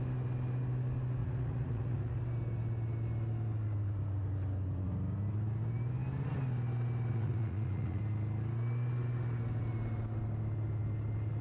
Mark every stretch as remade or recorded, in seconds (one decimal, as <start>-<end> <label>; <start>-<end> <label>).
0.0-1.2 recorded; 1.2-2.2 remade; 2.2-7.1 recorded; 7.1-8.0 remade; 8.0-11.4 recorded